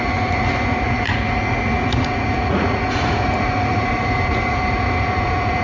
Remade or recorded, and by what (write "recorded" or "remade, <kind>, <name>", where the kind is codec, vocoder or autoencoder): remade, vocoder, Vocos